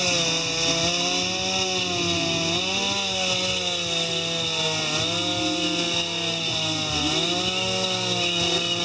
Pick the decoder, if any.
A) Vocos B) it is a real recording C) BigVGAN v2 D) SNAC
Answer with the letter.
B